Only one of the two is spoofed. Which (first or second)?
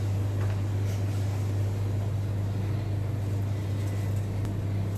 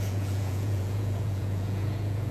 second